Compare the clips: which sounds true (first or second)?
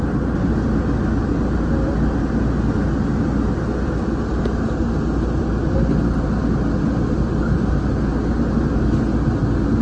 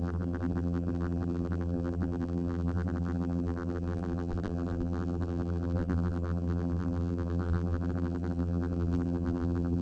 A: first